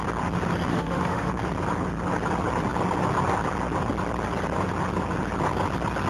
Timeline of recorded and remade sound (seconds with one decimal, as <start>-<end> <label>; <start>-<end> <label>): 0.0-0.7 recorded; 0.7-1.3 remade; 1.3-6.1 recorded